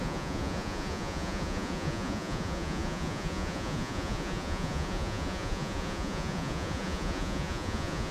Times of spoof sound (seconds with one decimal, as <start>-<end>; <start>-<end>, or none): 0.0-8.1